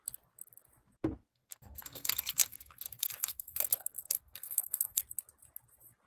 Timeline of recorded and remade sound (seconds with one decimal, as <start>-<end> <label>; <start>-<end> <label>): 0.0-1.3 recorded; 1.3-5.0 remade; 5.0-6.1 recorded